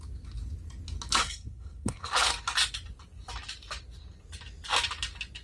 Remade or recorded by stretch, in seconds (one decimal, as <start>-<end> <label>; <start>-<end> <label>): 0.0-1.2 recorded; 1.2-2.1 remade; 2.1-5.4 recorded